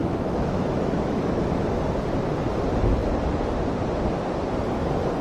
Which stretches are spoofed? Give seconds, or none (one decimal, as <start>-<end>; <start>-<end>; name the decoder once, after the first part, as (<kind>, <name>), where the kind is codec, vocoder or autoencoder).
0.0-1.8 (autoencoder, DAC-VAE)